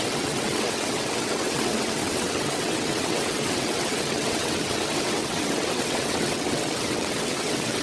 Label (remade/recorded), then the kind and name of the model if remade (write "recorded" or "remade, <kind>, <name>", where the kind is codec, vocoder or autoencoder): remade, vocoder, WaveNeXt